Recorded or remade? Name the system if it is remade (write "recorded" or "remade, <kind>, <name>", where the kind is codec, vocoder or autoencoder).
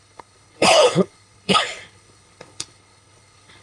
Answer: remade, codec, HILCodec